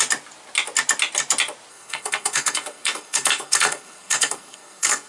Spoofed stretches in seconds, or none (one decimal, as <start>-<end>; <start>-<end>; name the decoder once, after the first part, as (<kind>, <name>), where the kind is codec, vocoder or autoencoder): 1.7-5.1 (codec, SNAC)